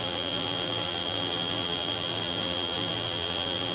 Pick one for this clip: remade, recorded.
remade